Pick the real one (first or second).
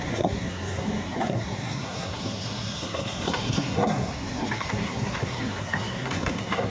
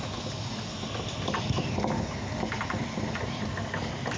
second